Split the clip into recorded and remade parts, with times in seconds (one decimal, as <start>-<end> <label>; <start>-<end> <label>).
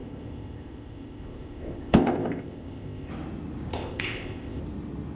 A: 0.0-3.1 remade; 3.1-3.7 recorded; 3.7-4.6 remade; 4.6-5.1 recorded